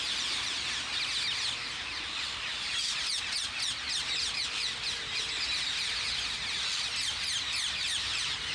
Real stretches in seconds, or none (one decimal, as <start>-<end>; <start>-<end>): 0.0-8.5